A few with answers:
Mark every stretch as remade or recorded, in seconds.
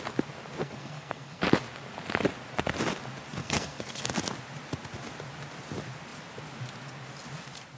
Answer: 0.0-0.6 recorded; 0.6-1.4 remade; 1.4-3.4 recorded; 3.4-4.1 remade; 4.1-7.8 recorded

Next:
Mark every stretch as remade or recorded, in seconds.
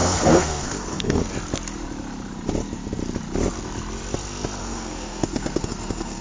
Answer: 0.0-1.2 remade; 1.2-4.6 recorded; 4.6-6.2 remade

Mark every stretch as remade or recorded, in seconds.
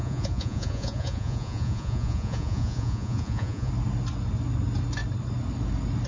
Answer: 0.0-3.7 remade; 3.7-6.1 recorded